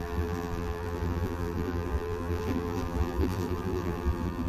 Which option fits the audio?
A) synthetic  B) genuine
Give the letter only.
A